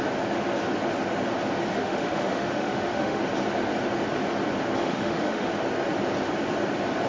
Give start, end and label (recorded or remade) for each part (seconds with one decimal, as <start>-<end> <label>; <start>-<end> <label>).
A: 0.0-1.7 recorded; 1.7-3.2 remade; 3.2-4.8 recorded; 4.8-5.5 remade; 5.5-7.1 recorded